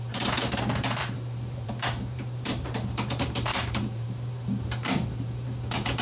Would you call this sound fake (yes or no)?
yes